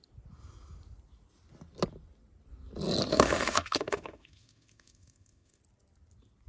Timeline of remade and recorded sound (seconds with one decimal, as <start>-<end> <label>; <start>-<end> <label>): 0.0-3.1 recorded; 3.1-5.6 remade; 5.6-6.5 recorded